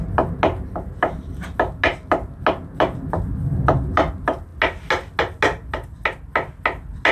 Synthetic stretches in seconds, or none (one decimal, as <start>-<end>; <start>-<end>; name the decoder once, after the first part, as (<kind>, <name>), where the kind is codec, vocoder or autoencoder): none